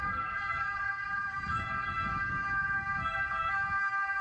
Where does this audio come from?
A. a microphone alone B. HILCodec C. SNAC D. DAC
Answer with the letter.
D